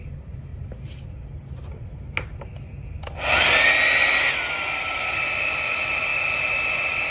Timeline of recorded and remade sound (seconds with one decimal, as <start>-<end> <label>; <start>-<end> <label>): 0.0-0.5 remade; 0.5-4.8 recorded; 4.8-6.1 remade; 6.1-7.1 recorded